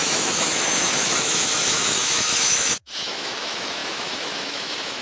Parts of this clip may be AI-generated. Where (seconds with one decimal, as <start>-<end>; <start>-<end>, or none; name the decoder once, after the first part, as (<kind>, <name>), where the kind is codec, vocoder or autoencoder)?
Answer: 0.0-5.0 (autoencoder, DAC-VAE)